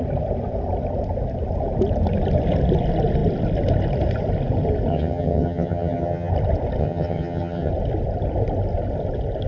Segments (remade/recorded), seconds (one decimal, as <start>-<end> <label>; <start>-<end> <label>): 0.0-4.9 recorded; 4.9-6.3 remade; 6.3-6.8 recorded; 6.8-7.7 remade; 7.7-9.5 recorded

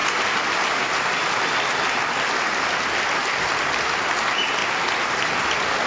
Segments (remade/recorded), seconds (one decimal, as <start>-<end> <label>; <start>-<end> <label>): 0.0-5.9 recorded

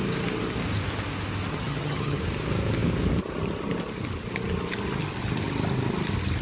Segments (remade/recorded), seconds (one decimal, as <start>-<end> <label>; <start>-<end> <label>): 0.0-1.5 recorded; 1.5-2.2 remade; 2.2-6.4 recorded